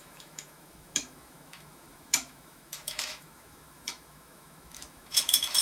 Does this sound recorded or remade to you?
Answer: remade